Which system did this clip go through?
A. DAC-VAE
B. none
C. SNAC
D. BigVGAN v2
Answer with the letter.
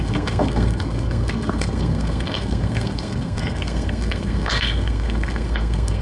C